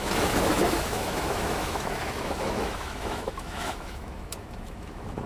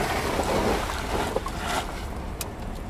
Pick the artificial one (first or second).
first